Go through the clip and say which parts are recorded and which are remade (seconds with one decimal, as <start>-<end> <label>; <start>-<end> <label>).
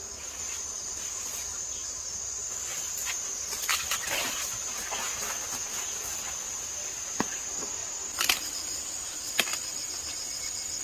0.0-3.7 recorded; 3.7-4.7 remade; 4.7-7.8 recorded; 7.8-9.1 remade; 9.1-9.5 recorded; 9.5-10.4 remade; 10.4-10.8 recorded